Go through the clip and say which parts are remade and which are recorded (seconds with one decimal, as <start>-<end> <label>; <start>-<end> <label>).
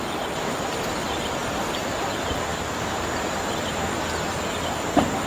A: 0.0-5.3 recorded